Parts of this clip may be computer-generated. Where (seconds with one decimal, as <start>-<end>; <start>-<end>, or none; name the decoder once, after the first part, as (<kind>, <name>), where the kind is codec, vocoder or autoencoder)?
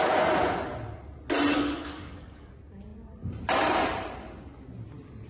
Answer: 1.5-2.5 (codec, DAC)